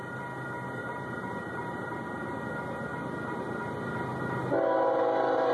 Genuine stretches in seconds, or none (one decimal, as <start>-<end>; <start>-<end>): 0.0-0.8; 2.4-2.9; 3.5-5.5